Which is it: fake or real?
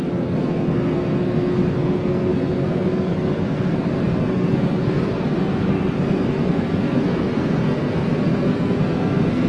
fake